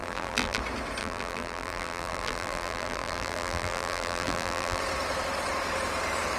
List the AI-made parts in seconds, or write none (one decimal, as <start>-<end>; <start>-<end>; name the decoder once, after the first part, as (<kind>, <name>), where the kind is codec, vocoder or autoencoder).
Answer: 0.0-0.6 (vocoder, BigVGAN v2); 1.0-4.8